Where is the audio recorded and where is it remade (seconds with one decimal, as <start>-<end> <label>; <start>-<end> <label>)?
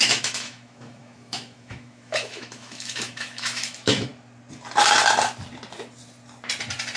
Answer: 0.0-4.1 remade; 4.1-7.0 recorded